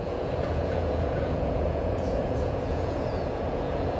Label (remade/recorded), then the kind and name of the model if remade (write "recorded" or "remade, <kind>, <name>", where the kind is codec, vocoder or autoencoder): remade, vocoder, Vocos